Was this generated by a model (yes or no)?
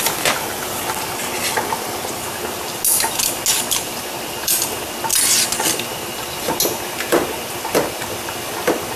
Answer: no